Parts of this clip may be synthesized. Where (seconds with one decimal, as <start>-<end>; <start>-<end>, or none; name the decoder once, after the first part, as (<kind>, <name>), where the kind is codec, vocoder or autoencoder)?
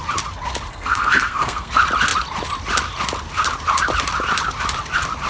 0.7-1.7 (codec, SNAC)